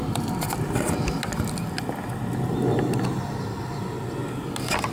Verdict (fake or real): real